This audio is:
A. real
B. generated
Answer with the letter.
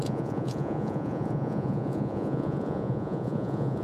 B